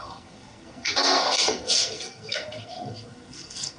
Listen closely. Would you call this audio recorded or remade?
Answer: remade